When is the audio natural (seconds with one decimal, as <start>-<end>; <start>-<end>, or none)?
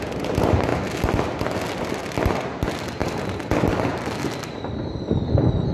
0.0-5.7